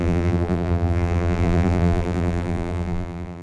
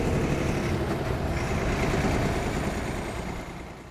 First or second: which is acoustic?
second